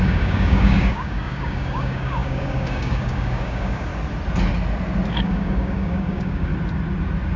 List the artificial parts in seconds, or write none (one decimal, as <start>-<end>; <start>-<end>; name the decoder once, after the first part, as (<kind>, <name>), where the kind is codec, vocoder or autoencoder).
0.0-3.9 (codec, DAC); 5.1-6.5